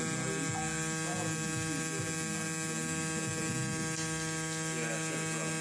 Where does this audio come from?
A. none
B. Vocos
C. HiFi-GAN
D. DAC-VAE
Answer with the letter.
A